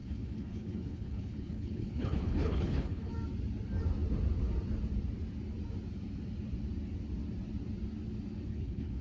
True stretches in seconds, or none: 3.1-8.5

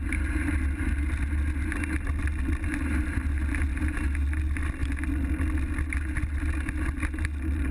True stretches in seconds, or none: 0.0-7.7

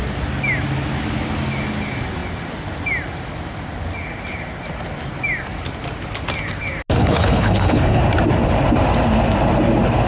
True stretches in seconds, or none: 0.0-7.0; 8.0-10.1

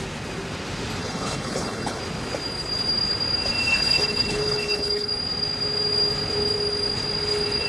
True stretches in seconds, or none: 0.0-1.0; 2.0-3.7; 5.1-7.7

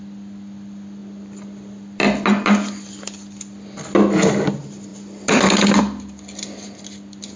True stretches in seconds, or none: 0.0-7.4

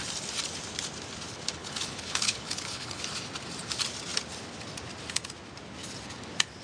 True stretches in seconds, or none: 0.0-1.6; 3.0-6.6